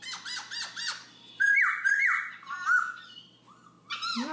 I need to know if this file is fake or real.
fake